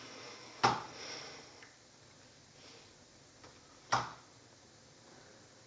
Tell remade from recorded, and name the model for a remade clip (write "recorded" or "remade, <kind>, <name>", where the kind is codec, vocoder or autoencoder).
recorded